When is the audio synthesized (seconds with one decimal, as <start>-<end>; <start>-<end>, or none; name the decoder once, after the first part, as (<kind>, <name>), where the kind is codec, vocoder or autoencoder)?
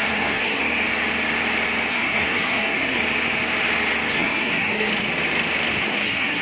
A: 0.0-0.6 (codec, SNAC); 1.9-3.0; 4.1-4.9; 5.8-6.4